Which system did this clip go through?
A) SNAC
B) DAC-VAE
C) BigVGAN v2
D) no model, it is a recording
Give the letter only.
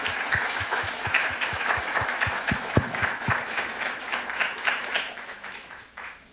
B